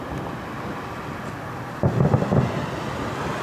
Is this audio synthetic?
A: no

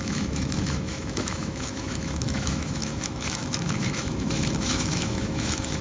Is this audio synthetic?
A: yes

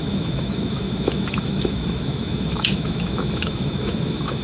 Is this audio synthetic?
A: yes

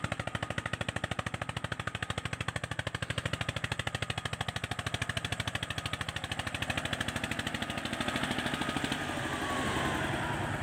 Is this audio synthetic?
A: no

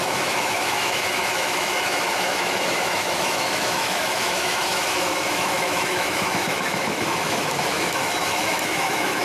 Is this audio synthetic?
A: yes